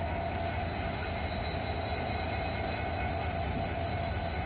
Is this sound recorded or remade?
recorded